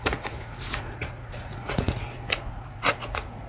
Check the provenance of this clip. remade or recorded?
remade